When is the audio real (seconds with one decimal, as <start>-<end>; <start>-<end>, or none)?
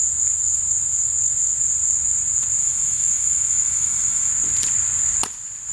0.0-2.6; 4.3-5.7